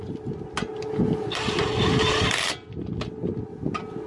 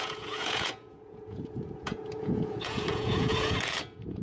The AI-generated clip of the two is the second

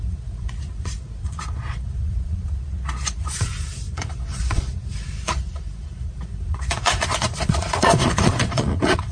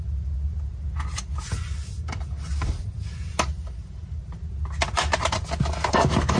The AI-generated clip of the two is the first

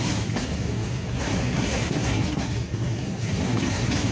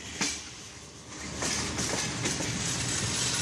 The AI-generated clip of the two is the first